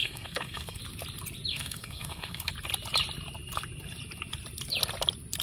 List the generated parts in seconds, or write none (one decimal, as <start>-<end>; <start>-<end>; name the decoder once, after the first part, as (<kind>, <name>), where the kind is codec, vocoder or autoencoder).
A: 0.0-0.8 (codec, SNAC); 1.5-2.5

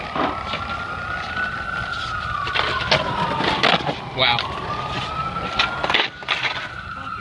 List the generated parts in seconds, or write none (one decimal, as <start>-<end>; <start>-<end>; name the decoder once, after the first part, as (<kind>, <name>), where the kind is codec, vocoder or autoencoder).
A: none

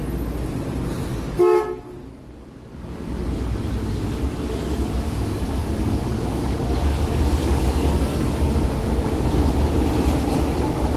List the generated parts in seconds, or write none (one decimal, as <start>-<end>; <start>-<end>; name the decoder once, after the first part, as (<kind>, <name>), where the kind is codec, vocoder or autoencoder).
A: 1.1-1.8 (codec, DAC); 2.7-3.2; 5.6-8.0; 8.8-9.5